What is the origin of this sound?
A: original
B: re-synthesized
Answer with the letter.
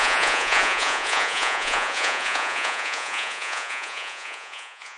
B